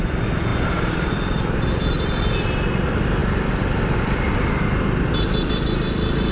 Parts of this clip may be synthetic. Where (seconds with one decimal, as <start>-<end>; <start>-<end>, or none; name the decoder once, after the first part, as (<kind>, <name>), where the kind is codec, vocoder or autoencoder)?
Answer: 0.5-1.1 (vocoder, BigVGAN v2)